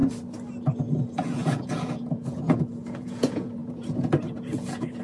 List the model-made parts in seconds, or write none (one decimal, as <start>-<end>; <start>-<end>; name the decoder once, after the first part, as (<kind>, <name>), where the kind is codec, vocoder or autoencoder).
1.0-5.0 (vocoder, Vocos)